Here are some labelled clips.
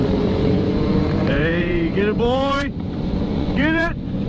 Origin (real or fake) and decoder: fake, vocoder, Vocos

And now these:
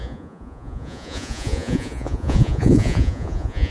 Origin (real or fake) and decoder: fake, vocoder, Vocos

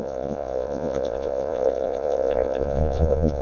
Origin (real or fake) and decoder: fake, vocoder, Vocos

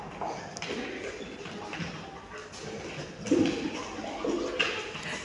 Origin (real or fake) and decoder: real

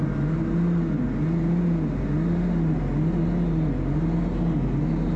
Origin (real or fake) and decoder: real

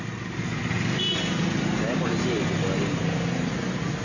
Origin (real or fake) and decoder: real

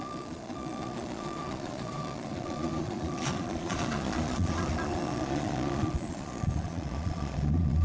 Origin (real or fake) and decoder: fake, vocoder, Vocos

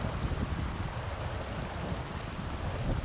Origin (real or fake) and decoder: real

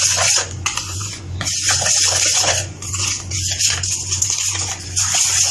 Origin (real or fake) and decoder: fake, vocoder, Vocos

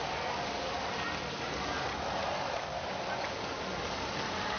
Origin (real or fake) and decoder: real